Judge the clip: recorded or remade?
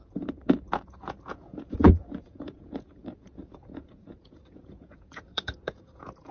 remade